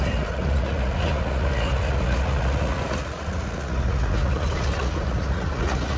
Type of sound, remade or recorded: remade